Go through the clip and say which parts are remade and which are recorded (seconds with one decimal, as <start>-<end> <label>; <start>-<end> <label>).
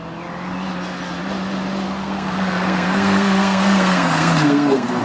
0.0-2.0 recorded; 2.0-5.0 remade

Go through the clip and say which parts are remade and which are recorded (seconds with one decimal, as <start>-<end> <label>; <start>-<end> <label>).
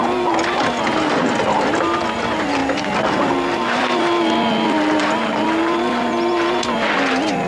0.0-7.5 recorded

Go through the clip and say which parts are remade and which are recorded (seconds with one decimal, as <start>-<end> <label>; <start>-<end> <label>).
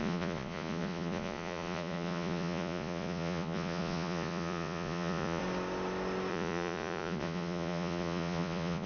0.0-5.4 remade; 5.4-6.3 recorded; 6.3-8.9 remade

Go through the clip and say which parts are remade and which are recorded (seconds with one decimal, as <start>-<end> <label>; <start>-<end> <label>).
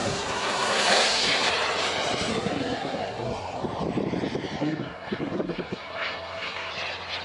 0.0-1.5 remade; 1.5-2.3 recorded; 2.3-3.6 remade; 3.6-4.6 recorded; 4.6-6.7 remade; 6.7-7.2 recorded